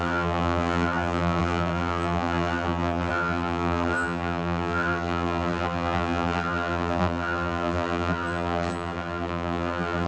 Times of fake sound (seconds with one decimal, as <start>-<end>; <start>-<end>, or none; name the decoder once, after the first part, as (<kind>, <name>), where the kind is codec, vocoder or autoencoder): 0.0-10.1 (vocoder, BigVGAN v2)